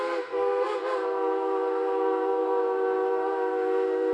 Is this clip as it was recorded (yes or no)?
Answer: no